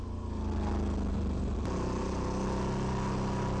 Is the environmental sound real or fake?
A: real